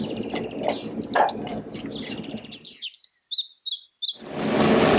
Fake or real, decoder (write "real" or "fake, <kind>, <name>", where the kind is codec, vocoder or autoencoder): real